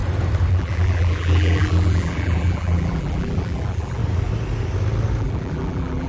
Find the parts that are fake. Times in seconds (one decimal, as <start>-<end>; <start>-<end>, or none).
0.5-4.0; 5.2-6.1